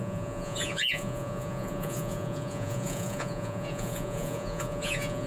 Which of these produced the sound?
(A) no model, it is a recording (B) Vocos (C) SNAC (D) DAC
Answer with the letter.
B